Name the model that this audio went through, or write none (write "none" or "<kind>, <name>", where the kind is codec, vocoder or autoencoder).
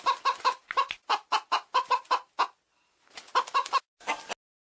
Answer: none